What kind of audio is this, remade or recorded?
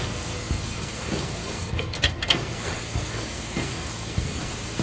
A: remade